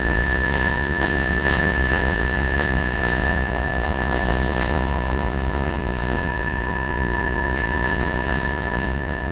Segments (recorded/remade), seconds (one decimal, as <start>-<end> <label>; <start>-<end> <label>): 0.0-9.3 remade